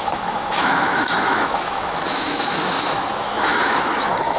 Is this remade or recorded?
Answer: remade